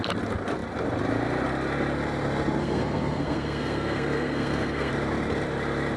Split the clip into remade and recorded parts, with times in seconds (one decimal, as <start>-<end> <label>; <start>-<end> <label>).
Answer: 0.0-2.6 recorded; 2.6-4.9 remade; 4.9-6.0 recorded